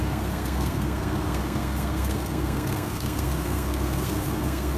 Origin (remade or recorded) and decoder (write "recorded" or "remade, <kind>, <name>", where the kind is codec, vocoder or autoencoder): remade, codec, SNAC